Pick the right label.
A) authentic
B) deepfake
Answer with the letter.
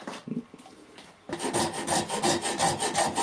A